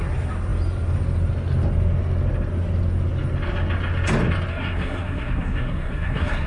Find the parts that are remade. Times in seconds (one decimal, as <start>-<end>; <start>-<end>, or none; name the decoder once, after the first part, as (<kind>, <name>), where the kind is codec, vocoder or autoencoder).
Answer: 4.5-6.5 (codec, SNAC)